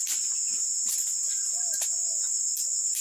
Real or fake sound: real